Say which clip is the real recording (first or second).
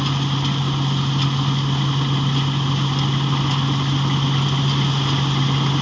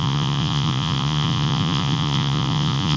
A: first